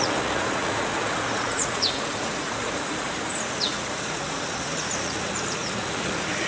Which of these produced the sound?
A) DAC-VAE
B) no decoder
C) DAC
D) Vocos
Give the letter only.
D